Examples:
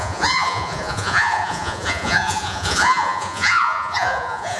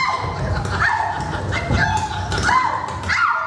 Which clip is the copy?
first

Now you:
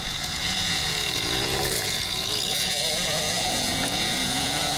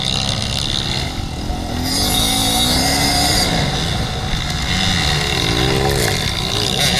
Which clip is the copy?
first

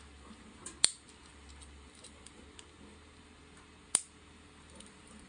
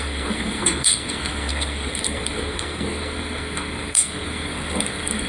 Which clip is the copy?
second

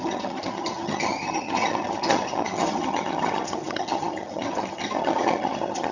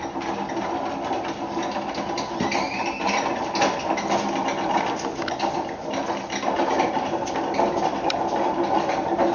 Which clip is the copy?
first